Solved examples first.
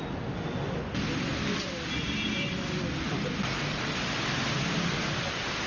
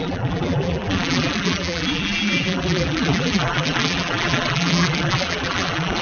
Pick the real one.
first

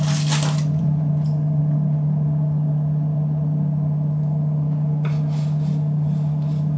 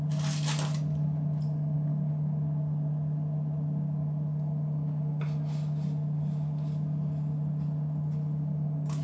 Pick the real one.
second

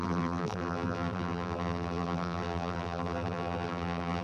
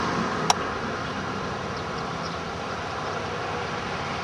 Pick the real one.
second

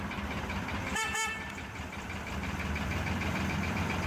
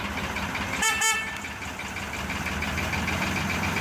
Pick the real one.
second